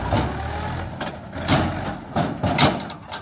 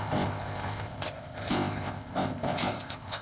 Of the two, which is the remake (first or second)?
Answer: second